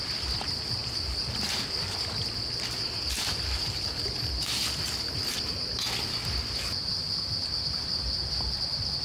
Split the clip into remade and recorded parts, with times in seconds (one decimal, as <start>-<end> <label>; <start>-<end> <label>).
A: 0.0-9.0 recorded